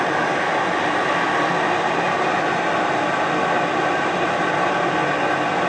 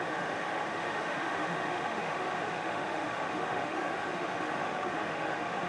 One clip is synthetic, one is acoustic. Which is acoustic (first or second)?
first